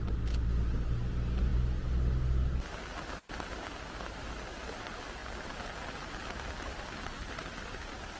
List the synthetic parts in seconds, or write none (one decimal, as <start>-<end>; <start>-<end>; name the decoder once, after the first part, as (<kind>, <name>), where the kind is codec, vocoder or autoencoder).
none